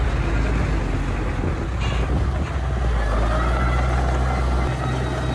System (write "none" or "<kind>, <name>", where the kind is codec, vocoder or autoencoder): none